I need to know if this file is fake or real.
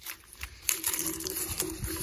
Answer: fake